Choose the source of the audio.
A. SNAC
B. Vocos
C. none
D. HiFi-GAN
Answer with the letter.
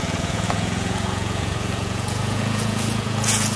B